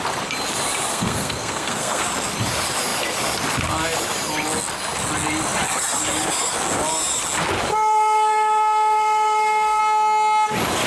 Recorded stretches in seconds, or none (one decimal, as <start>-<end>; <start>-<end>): 0.0-0.9; 2.0-7.7; 9.8-10.9